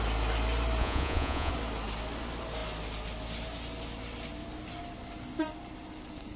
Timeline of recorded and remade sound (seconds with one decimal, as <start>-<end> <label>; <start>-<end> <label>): 0.0-0.8 recorded; 0.8-1.5 remade; 1.5-6.4 recorded